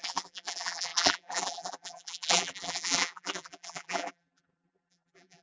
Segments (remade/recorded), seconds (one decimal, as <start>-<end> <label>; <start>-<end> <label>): 0.0-5.4 remade